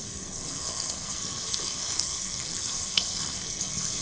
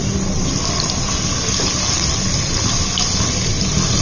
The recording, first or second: second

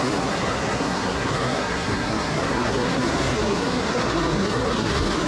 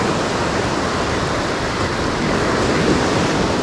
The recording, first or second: second